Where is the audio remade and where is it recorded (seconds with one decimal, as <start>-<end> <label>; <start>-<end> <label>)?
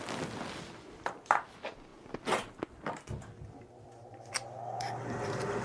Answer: 0.0-5.6 recorded